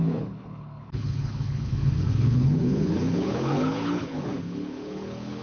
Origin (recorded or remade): remade